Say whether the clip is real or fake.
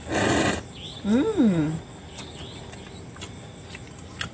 real